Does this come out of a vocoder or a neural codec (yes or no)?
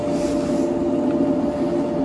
no